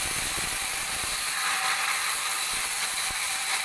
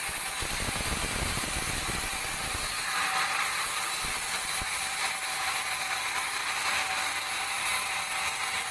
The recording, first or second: second